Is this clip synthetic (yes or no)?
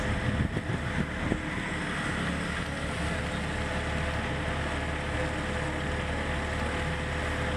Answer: no